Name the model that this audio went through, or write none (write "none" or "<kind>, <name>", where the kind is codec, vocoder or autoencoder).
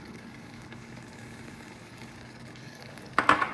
codec, DAC